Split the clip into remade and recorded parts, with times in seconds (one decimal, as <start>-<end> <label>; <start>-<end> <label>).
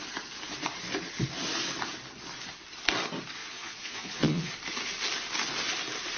0.0-3.4 recorded; 3.4-4.5 remade; 4.5-6.2 recorded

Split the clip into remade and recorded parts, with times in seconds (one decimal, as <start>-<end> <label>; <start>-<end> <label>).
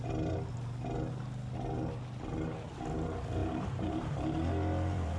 0.0-3.4 recorded; 3.4-5.2 remade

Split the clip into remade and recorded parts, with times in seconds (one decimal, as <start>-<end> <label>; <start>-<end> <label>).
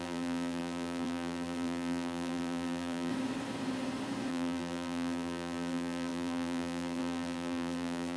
0.0-3.1 remade; 3.1-4.3 recorded; 4.3-8.2 remade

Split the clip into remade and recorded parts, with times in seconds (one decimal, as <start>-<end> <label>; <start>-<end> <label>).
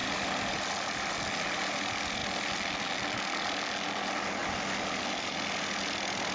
0.0-6.3 recorded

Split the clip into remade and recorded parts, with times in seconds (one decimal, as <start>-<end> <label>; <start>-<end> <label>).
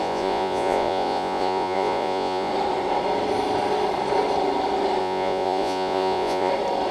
0.0-2.5 remade; 2.5-5.0 recorded; 5.0-6.5 remade; 6.5-6.9 recorded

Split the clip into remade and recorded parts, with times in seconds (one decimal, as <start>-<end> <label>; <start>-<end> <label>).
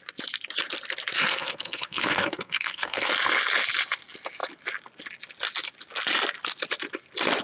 0.0-1.2 recorded; 1.2-3.1 remade; 3.1-7.4 recorded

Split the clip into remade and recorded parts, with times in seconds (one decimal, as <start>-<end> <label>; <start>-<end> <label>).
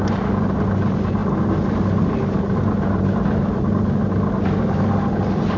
0.0-5.6 recorded